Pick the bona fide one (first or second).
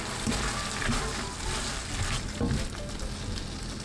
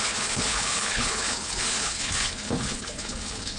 first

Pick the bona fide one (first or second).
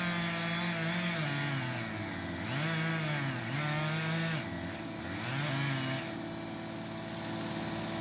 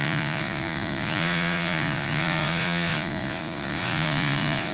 first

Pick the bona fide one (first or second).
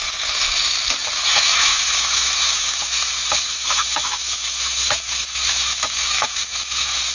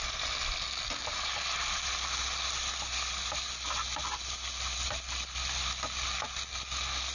second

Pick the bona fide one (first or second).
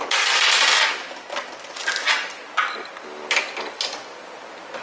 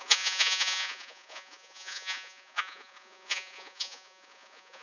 first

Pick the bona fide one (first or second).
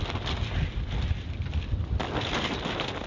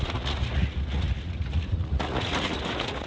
first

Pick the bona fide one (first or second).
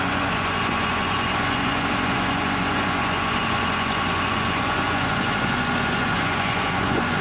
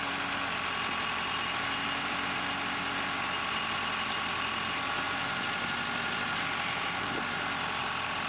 second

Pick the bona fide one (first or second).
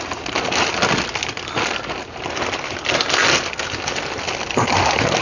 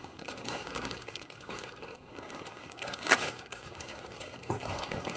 first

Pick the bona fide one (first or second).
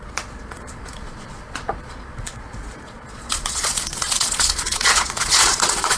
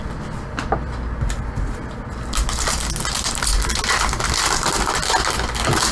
second